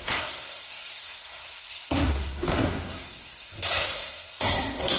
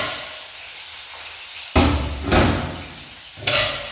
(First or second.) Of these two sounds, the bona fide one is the second